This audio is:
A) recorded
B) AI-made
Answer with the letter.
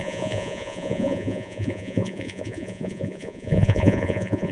B